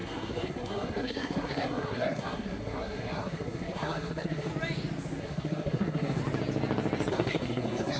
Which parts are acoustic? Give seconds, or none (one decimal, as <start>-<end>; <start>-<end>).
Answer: 4.5-5.2; 6.2-7.1